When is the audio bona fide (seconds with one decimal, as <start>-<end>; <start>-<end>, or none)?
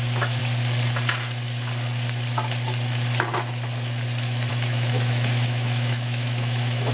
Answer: 0.4-4.5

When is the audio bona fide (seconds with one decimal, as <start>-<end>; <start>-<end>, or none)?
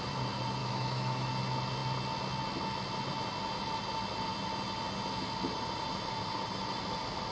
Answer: 0.0-0.6; 1.3-7.3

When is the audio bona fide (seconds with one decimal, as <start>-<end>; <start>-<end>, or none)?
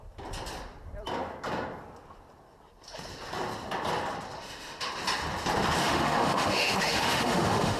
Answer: 0.0-4.4; 4.9-5.8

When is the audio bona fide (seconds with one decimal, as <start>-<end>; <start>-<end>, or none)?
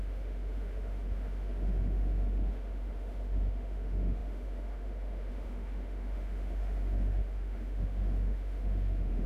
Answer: none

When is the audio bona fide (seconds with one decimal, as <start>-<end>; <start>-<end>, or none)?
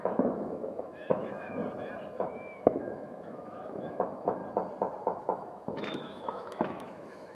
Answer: 1.6-2.2; 4.4-5.2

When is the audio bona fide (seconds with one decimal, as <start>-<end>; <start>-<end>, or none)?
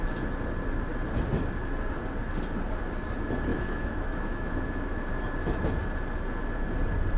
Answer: 0.0-3.5; 5.1-7.2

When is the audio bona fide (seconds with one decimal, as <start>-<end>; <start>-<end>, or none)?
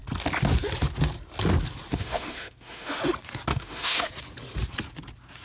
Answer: 0.0-1.9; 3.0-3.5; 4.1-5.4